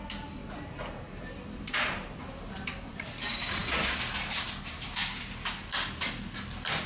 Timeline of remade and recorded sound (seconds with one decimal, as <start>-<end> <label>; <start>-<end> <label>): 0.0-0.4 recorded; 0.4-3.2 remade; 3.2-6.9 recorded